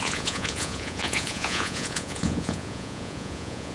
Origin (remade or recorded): remade